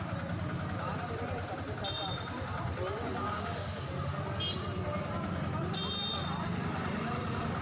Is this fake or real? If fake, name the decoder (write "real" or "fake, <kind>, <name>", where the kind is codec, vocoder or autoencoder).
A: real